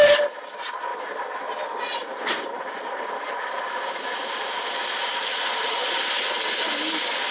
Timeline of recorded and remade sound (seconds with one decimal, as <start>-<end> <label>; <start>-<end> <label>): 0.0-0.9 recorded; 0.9-5.3 remade; 5.3-7.3 recorded